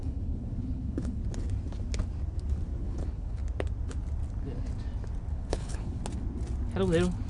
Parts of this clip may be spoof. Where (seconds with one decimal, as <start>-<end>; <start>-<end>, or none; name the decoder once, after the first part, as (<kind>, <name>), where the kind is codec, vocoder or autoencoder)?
0.0-1.2 (codec, HILCodec); 2.8-3.4; 5.3-6.0